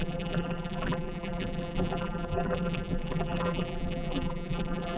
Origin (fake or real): fake